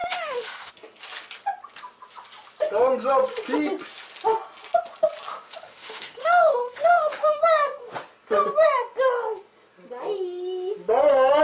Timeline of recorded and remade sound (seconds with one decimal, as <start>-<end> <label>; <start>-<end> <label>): 0.0-0.7 remade; 0.7-5.3 recorded; 5.3-7.4 remade; 7.4-11.4 recorded

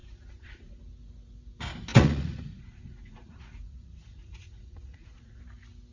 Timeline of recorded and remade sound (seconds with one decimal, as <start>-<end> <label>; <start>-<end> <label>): 0.0-0.8 remade; 0.8-1.9 recorded; 1.9-5.4 remade; 5.4-5.9 recorded

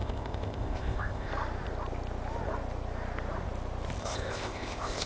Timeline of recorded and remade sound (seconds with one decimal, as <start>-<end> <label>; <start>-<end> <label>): 0.0-1.3 remade; 1.3-4.0 recorded; 4.0-5.1 remade

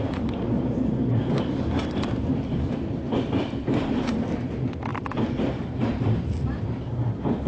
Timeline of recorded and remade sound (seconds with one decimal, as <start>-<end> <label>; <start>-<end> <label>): 0.0-4.9 recorded; 4.9-6.7 remade; 6.7-7.5 recorded

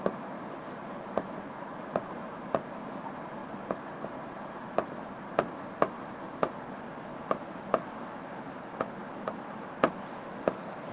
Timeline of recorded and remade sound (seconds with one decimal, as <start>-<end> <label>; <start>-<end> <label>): 0.0-0.8 recorded; 0.8-2.6 remade; 2.6-10.9 recorded